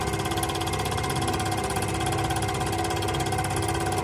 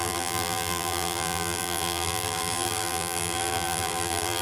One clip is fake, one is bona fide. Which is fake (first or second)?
second